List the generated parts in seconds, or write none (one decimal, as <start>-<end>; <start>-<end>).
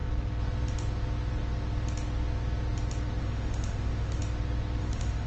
3.2-4.2; 4.8-5.3